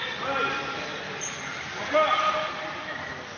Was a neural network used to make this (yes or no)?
no